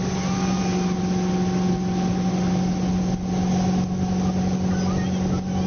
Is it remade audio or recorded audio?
recorded